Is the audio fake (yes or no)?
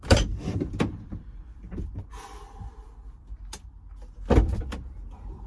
yes